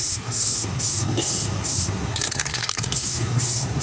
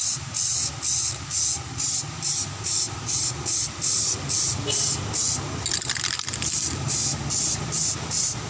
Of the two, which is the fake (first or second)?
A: first